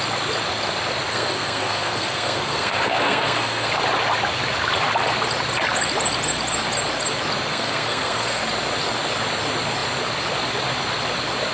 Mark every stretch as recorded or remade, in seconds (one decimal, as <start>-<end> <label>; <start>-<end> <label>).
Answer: 0.0-1.1 recorded; 1.1-3.7 remade; 3.7-7.5 recorded; 7.5-8.4 remade; 8.4-11.5 recorded